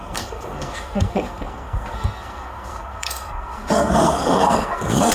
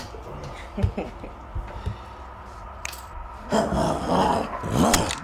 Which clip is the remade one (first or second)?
first